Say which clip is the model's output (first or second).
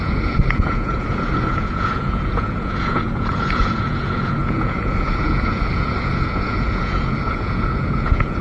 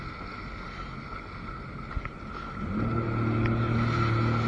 first